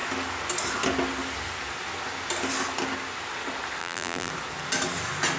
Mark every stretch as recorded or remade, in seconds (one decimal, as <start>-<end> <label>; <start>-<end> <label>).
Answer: 0.0-3.8 recorded; 3.8-4.3 remade; 4.3-5.4 recorded